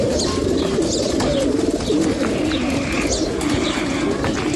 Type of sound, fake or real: real